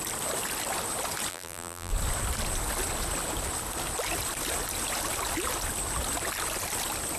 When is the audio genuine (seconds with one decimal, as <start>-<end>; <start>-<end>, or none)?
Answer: 0.0-1.3; 1.9-7.2